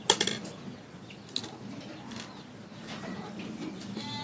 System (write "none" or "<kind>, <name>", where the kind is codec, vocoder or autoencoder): none